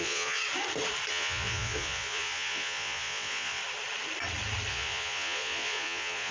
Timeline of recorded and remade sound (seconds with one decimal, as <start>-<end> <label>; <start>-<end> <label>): 0.0-0.4 remade; 0.4-1.1 recorded; 1.1-3.6 remade; 3.6-4.7 recorded; 4.7-6.3 remade